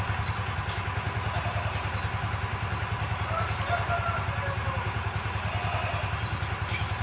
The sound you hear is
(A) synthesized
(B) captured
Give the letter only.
B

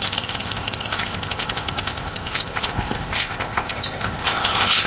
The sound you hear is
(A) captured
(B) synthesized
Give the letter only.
B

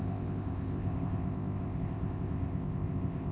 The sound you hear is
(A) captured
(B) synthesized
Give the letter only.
B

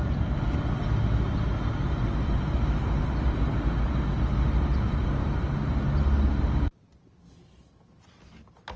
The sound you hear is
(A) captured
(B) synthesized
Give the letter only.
A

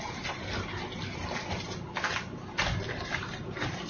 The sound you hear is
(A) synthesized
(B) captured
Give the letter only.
B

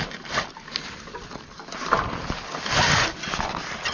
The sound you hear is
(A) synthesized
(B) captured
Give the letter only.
B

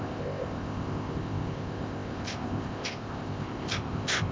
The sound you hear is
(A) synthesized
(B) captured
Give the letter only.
A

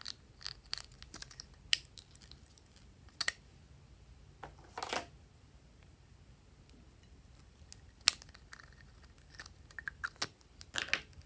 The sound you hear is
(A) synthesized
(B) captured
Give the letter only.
B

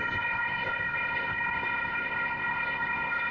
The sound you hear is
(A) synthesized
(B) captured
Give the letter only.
A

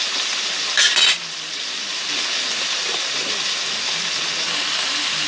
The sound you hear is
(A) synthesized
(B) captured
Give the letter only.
B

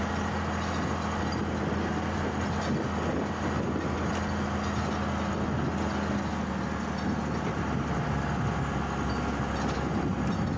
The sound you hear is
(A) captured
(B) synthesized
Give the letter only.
A